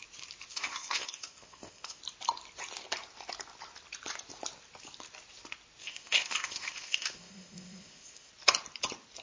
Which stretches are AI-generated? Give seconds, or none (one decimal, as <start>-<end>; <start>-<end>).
0.5-2.0; 5.8-8.3